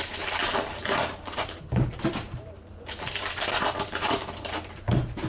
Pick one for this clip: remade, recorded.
remade